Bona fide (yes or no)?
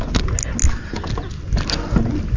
yes